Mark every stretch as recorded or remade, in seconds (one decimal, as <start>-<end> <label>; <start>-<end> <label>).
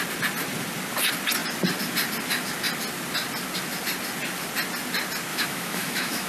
0.0-5.3 recorded; 5.3-6.3 remade